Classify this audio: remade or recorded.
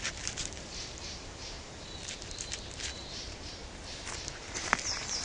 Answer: remade